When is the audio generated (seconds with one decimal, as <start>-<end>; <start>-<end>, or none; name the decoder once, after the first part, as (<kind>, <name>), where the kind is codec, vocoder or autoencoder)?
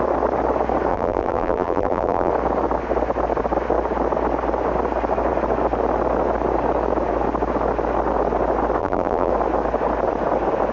0.9-2.3 (vocoder, BigVGAN v2); 8.8-9.3